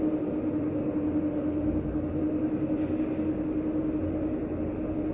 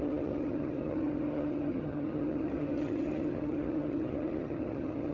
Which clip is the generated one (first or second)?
second